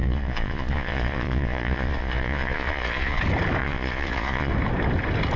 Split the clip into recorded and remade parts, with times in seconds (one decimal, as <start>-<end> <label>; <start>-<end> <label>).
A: 0.0-3.2 remade; 3.2-3.6 recorded; 3.6-4.5 remade; 4.5-5.4 recorded